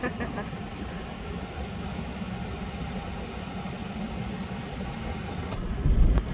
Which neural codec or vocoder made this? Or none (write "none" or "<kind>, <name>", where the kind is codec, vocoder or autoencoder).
none